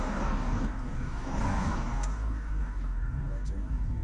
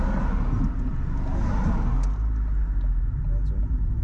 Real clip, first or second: second